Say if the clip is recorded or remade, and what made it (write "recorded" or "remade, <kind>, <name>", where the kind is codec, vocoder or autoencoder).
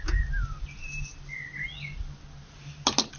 recorded